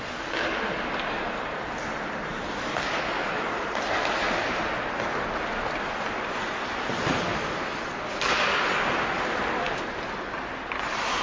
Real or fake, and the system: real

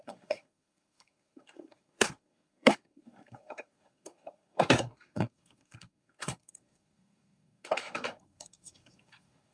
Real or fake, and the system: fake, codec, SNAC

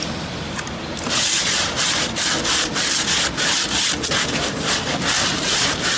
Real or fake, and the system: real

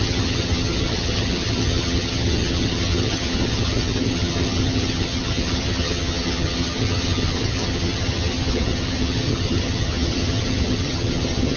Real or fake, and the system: fake, vocoder, HiFi-GAN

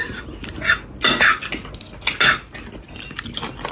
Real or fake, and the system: real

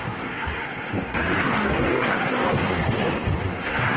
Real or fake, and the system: fake, codec, SNAC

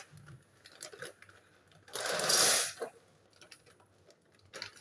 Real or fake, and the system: real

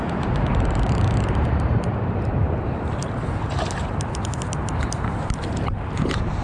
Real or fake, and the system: fake, vocoder, BigVGAN v2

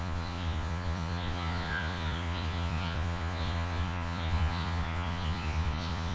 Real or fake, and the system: fake, vocoder, Vocos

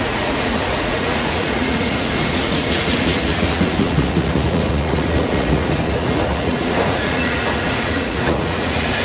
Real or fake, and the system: fake, vocoder, Vocos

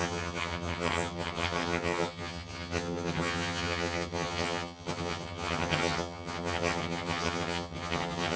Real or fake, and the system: fake, vocoder, HiFi-GAN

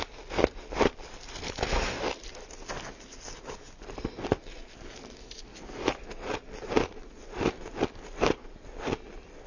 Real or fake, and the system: real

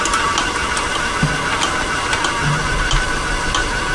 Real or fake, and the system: real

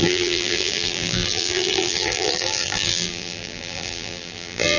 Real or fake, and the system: fake, vocoder, BigVGAN v2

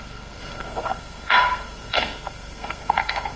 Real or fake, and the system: fake, codec, SNAC